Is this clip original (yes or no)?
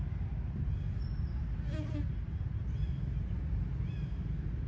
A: yes